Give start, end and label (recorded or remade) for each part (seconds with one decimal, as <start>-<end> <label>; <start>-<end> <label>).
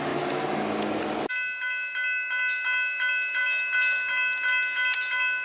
0.0-5.4 recorded